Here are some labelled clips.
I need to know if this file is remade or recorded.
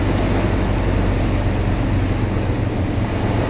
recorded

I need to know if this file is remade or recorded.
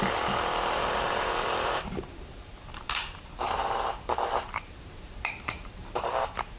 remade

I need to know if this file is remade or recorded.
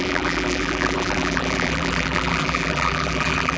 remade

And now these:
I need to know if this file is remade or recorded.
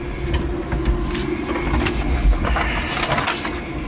recorded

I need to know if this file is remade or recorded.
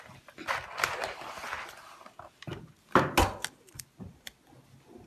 recorded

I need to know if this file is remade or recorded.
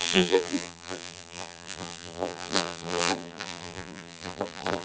remade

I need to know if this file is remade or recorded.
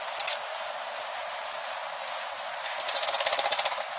recorded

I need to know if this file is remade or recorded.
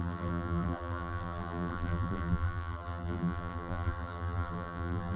remade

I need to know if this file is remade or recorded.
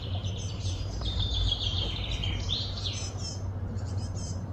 remade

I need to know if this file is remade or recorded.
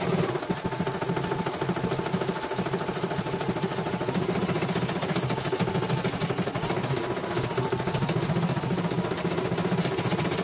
recorded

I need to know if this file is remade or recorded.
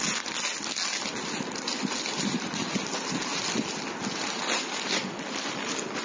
recorded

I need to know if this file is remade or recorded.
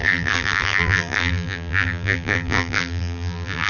remade